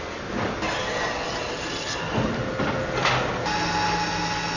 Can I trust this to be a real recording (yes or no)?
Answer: yes